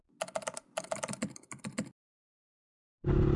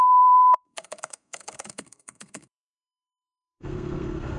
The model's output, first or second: second